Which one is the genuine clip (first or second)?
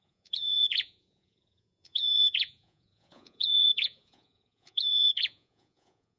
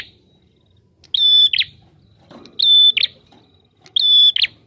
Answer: second